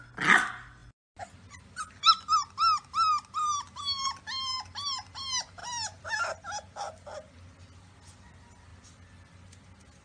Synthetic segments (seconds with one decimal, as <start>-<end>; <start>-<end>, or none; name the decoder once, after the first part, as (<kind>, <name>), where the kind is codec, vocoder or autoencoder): none